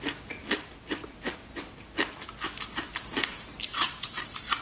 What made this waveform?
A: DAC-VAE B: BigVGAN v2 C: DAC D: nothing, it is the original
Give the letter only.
D